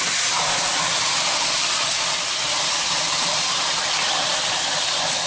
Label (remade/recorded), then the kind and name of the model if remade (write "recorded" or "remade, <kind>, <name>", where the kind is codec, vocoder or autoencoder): recorded